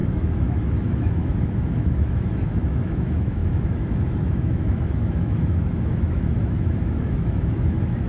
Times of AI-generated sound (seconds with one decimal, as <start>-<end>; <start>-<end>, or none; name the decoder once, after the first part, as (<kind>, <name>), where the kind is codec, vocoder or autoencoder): 0.0-8.1 (autoencoder, DAC-VAE)